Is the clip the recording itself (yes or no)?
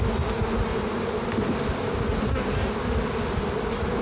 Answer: yes